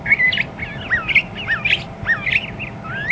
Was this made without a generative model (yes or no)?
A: yes